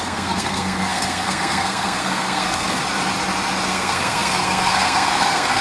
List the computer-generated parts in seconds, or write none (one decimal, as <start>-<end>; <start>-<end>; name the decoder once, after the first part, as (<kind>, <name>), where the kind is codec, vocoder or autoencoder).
0.0-2.8 (codec, SNAC); 3.7-5.6